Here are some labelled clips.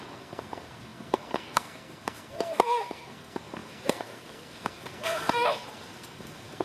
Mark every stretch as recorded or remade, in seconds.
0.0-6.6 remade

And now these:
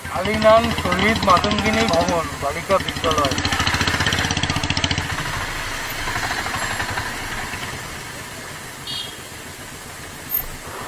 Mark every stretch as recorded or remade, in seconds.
0.0-10.9 recorded

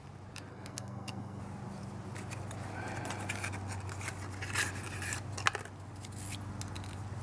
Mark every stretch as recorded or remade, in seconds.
0.0-0.5 recorded; 0.5-1.4 remade; 1.4-7.2 recorded

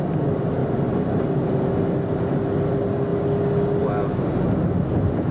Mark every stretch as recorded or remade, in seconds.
0.0-5.3 recorded

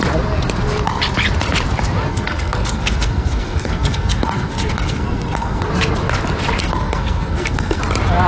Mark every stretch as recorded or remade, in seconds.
0.0-2.1 recorded; 2.1-5.7 remade; 5.7-6.6 recorded; 6.6-7.8 remade; 7.8-8.3 recorded